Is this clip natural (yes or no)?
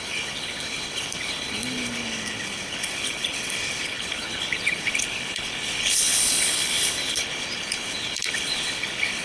no